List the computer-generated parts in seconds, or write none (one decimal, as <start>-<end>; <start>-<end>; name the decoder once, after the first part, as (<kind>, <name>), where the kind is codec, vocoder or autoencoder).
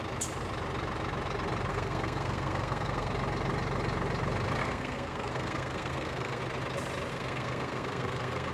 1.7-3.1 (codec, SNAC); 4.6-6.4; 7.1-8.5